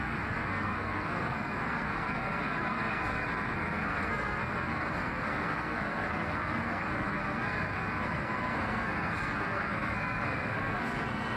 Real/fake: fake